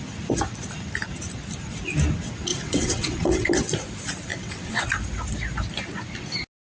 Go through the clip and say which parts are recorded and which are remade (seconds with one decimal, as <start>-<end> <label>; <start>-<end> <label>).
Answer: 0.0-2.5 recorded; 2.5-3.5 remade; 3.5-4.3 recorded; 4.3-4.9 remade; 4.9-6.7 recorded